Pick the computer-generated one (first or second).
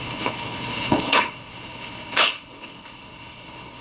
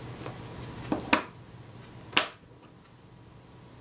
first